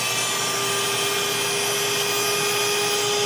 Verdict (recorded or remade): recorded